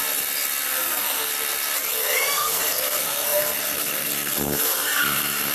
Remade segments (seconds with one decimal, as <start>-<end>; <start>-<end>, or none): 0.7-1.3; 1.9-5.5